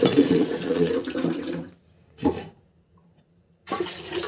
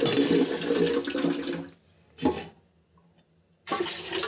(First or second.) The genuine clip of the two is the second